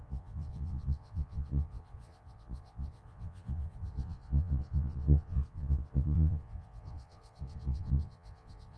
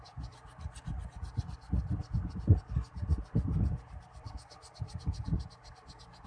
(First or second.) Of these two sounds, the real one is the second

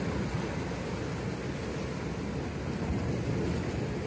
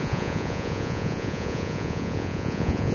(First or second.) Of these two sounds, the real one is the first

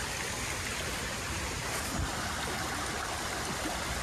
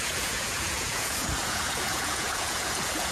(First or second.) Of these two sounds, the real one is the first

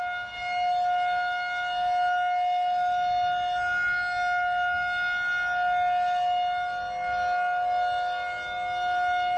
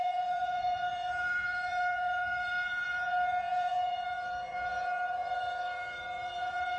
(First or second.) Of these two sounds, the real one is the first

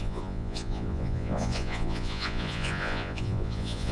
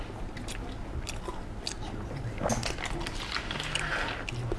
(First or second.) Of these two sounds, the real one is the second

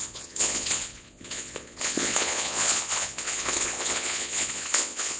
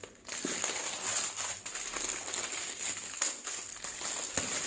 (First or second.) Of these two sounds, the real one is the second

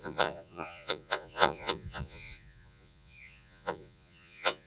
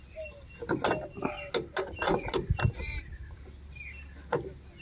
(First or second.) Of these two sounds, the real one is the second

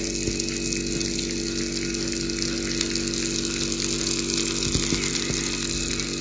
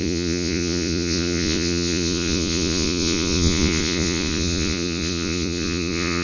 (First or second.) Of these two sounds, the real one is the first